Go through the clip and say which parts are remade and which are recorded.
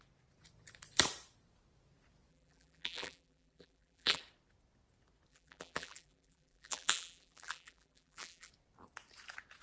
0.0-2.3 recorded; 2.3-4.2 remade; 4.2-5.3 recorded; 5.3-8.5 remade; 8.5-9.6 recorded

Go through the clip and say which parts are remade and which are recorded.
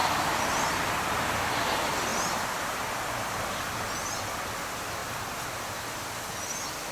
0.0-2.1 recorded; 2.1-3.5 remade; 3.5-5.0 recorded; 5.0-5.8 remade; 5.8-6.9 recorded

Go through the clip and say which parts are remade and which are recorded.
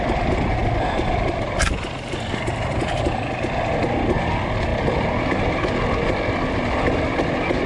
0.0-0.6 recorded; 0.6-3.7 remade; 3.7-7.7 recorded